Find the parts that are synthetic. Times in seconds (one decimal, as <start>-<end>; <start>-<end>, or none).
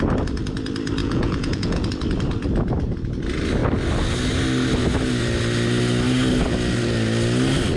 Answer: 1.0-1.9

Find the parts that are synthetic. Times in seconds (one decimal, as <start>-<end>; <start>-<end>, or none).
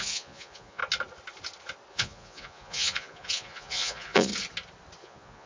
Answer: 0.0-0.8; 1.9-4.3; 5.0-5.5